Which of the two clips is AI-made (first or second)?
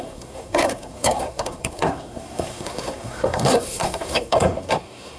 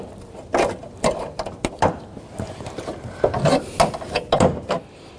first